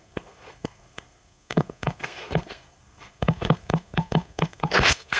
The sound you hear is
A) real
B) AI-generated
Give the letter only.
B